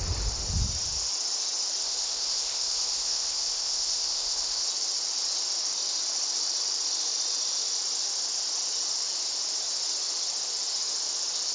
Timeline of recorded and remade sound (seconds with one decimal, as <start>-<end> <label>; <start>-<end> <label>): 0.0-1.8 recorded; 1.8-4.6 remade; 4.6-11.5 recorded